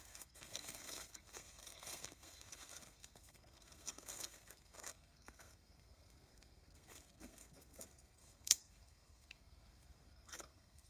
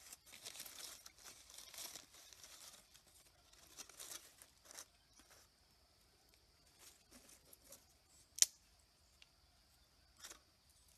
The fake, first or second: first